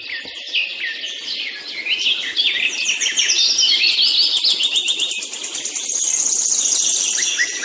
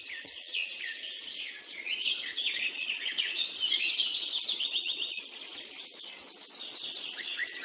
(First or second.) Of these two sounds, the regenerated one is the second